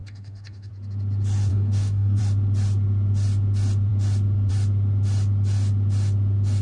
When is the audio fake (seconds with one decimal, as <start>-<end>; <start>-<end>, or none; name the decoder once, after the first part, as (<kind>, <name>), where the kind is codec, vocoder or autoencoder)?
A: 0.0-0.7 (codec, DAC); 1.5-2.2